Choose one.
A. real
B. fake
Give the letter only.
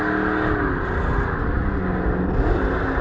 A